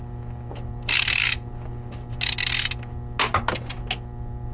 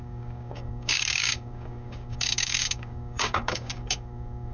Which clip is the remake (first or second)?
second